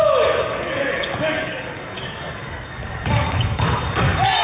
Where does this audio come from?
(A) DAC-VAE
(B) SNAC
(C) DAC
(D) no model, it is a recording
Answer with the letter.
C